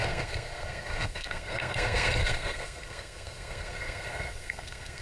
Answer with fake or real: fake